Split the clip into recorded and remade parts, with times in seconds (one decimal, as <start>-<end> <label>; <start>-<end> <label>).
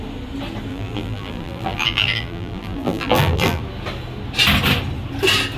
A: 0.0-0.7 recorded; 0.7-3.6 remade; 3.6-5.6 recorded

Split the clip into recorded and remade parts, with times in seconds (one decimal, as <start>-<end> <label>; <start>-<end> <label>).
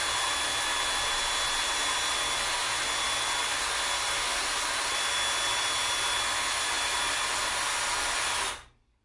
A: 0.0-9.0 recorded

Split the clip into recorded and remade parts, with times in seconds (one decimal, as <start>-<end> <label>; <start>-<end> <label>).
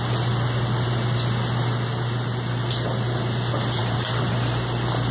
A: 0.0-3.8 recorded; 3.8-4.3 remade; 4.3-5.1 recorded